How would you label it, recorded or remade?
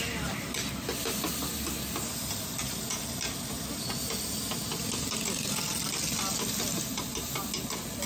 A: recorded